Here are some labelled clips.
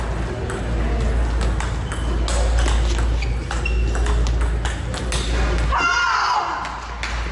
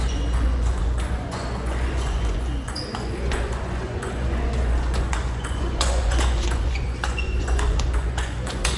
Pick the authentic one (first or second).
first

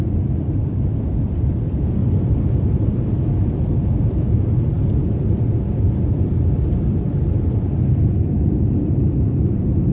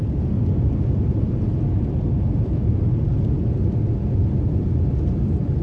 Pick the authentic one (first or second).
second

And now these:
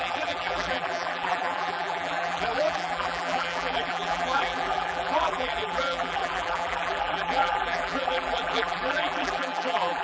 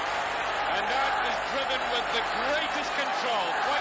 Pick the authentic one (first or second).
second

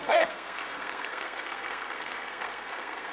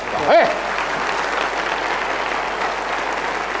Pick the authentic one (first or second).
second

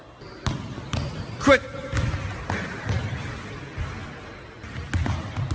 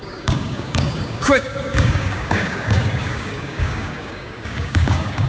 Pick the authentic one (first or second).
first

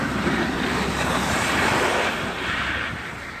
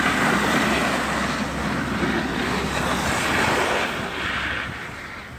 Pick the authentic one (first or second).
second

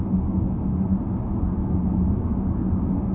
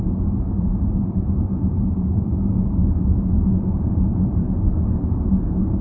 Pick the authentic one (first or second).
first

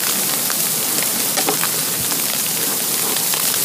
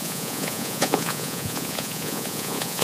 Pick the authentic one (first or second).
first